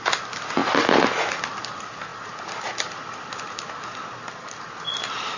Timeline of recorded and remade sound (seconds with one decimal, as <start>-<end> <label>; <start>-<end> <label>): 0.0-5.4 recorded